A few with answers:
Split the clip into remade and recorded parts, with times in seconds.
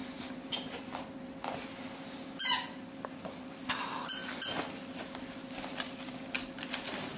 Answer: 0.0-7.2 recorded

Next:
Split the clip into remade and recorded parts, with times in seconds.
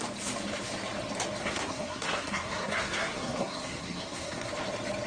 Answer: 0.0-1.4 recorded; 1.4-4.5 remade; 4.5-5.1 recorded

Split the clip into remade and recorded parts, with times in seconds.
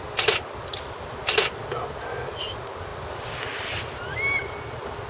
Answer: 0.0-5.1 recorded